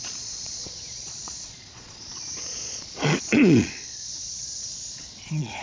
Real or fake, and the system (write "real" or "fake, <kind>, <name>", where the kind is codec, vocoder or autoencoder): fake, vocoder, Vocos